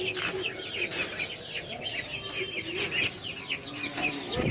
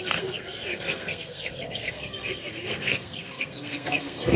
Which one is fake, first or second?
second